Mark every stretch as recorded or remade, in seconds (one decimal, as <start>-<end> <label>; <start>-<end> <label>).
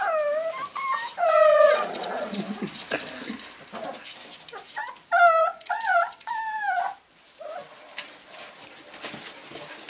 0.0-1.5 recorded; 1.5-2.4 remade; 2.4-5.4 recorded; 5.4-6.3 remade; 6.3-9.9 recorded